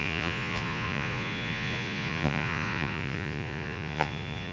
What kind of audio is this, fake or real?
fake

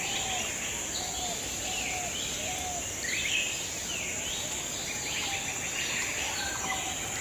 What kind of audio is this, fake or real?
real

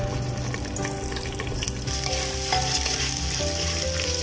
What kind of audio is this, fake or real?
real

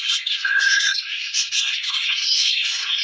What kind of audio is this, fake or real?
fake